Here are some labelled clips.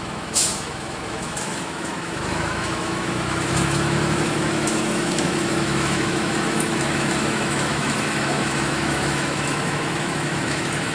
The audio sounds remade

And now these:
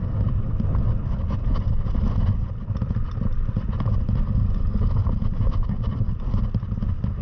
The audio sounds recorded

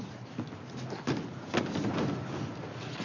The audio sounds recorded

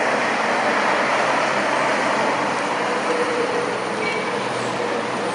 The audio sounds recorded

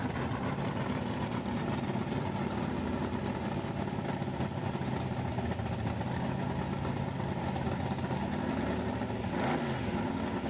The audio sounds recorded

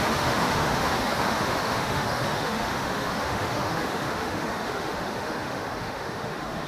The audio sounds remade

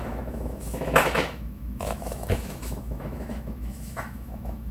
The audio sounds remade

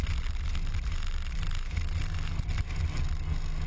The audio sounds recorded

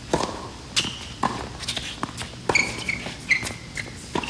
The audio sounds recorded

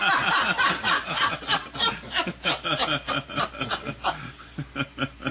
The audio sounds recorded